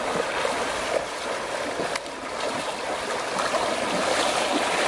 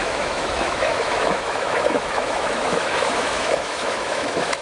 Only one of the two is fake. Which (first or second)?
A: second